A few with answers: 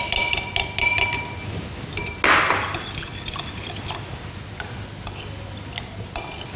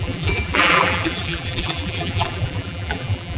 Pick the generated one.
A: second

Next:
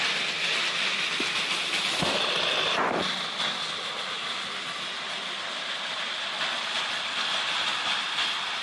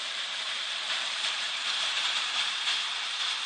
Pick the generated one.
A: second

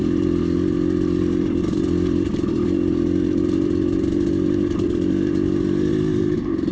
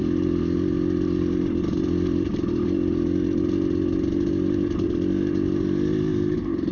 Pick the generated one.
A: first